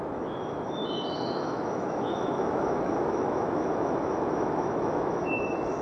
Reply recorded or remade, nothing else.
remade